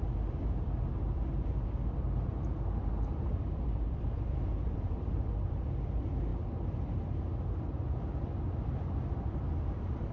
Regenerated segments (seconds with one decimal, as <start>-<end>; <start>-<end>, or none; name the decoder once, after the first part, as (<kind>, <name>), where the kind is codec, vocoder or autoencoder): 0.0-6.3 (vocoder, BigVGAN v2); 8.6-10.1